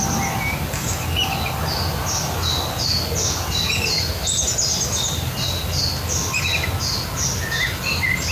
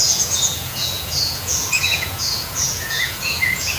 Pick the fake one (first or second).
second